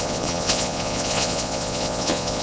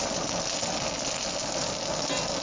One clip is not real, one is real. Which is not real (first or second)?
first